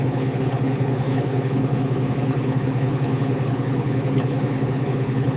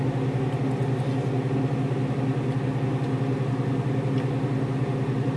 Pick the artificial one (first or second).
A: first